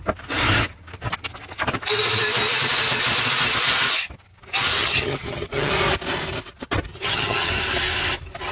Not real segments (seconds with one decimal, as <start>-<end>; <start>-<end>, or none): 4.8-5.7; 6.9-7.5

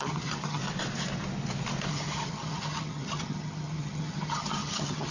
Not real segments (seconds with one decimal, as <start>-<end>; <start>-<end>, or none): 0.0-0.6; 1.9-5.1

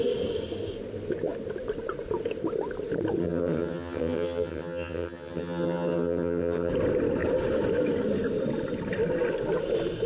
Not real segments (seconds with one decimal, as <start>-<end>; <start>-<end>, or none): 3.2-6.7